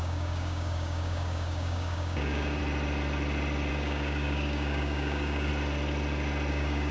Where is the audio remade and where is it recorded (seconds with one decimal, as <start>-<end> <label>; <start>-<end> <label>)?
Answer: 0.0-2.6 remade; 2.6-3.7 recorded; 3.7-5.5 remade; 5.5-6.5 recorded; 6.5-6.9 remade